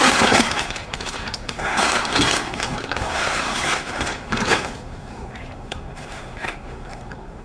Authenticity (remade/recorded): remade